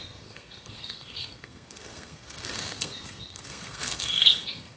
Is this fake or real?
fake